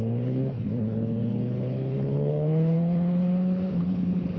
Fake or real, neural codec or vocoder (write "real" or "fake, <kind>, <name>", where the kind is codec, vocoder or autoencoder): fake, codec, HILCodec